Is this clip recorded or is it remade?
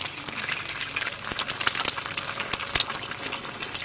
recorded